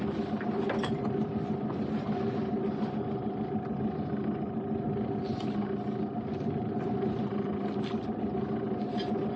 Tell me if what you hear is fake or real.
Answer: real